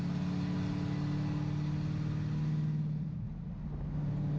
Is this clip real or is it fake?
real